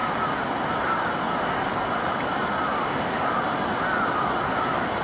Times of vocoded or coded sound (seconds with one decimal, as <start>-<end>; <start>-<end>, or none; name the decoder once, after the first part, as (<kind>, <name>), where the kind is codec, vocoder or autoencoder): 0.0-2.4 (vocoder, BigVGAN v2)